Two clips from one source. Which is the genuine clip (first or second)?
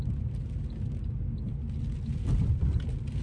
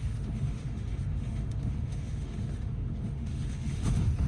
first